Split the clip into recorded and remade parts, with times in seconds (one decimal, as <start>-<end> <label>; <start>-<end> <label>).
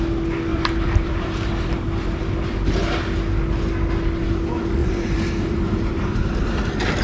0.0-0.5 recorded; 0.5-1.5 remade; 1.5-4.8 recorded; 4.8-6.3 remade; 6.3-7.0 recorded